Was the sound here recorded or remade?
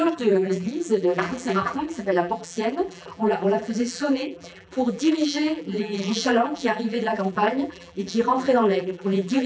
remade